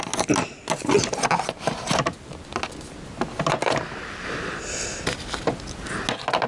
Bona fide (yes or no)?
yes